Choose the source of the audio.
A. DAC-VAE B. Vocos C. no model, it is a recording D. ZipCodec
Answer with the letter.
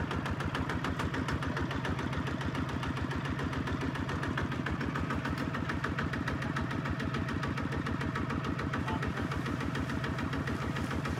C